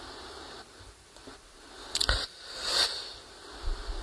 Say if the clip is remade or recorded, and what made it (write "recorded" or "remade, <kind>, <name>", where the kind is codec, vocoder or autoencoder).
recorded